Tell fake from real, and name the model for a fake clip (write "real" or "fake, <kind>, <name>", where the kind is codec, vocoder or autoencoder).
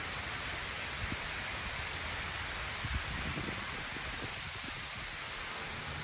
real